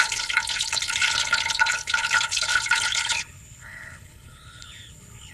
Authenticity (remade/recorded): remade